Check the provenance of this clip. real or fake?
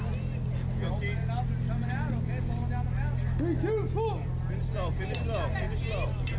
real